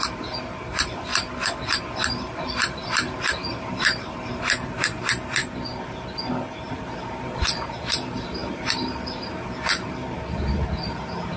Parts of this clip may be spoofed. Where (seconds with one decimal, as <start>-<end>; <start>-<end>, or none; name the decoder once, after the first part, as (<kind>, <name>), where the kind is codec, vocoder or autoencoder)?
0.0-1.1 (vocoder, BigVGAN v2); 1.8-5.4; 6.7-11.4